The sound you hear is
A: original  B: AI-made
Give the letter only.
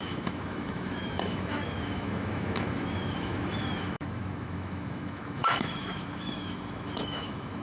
B